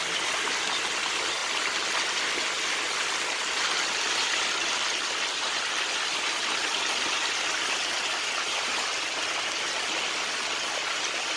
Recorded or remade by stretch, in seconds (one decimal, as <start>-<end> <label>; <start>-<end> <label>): 0.0-1.4 recorded; 1.4-3.6 remade; 3.6-11.4 recorded